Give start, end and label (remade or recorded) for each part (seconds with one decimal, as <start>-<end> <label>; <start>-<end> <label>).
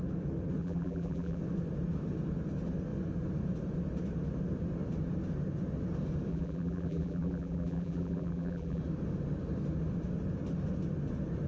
0.0-0.6 recorded; 0.6-1.4 remade; 1.4-6.3 recorded; 6.3-8.8 remade; 8.8-11.5 recorded